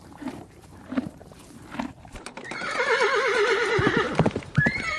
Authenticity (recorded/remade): remade